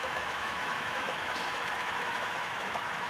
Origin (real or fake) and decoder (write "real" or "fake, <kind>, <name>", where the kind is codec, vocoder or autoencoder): fake, autoencoder, DAC-VAE